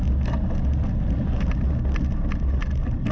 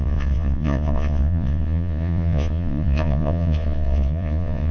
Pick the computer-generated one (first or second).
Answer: second